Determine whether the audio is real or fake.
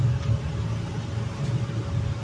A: real